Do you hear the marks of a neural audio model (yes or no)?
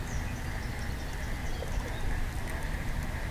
no